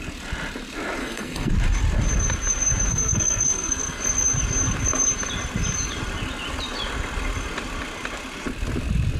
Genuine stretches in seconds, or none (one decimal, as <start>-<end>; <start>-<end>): 0.0-1.0; 1.5-2.9; 4.0-9.2